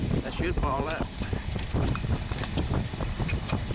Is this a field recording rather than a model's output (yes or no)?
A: no